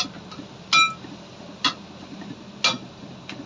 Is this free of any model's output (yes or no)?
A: yes